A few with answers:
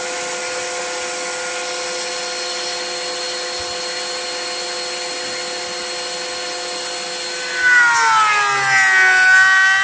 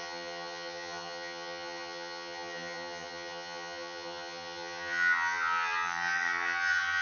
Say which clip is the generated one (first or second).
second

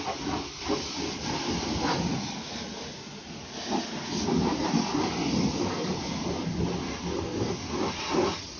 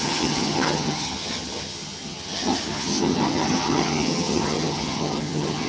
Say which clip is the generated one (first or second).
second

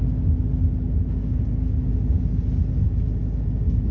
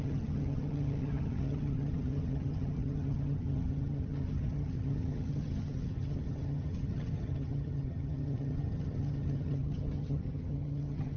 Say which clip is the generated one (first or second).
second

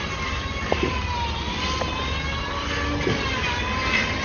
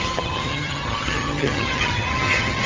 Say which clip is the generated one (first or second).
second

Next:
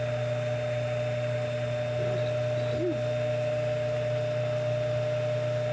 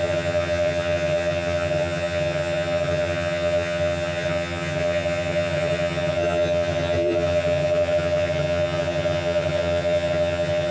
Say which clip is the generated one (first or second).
second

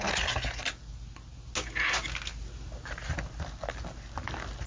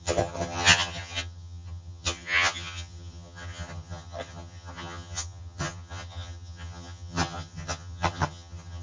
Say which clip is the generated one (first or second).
second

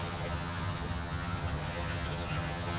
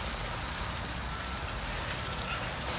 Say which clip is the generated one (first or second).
first